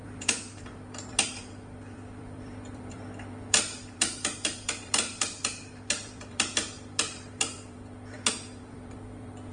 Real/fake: fake